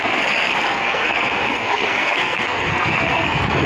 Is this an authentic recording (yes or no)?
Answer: no